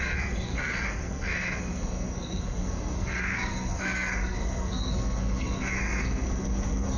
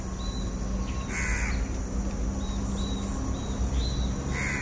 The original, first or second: second